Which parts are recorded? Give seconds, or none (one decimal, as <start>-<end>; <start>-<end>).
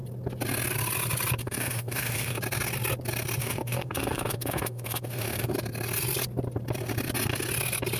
0.0-1.4; 2.4-3.4; 5.5-8.0